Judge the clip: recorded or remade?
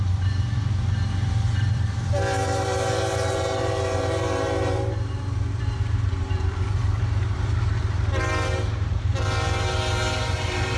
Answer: remade